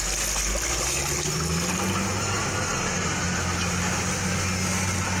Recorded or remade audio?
recorded